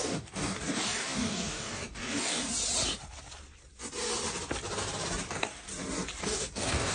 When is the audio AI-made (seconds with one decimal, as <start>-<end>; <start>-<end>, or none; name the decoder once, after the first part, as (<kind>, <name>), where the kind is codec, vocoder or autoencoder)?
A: 0.0-2.4 (codec, DAC); 5.3-5.7; 6.2-6.9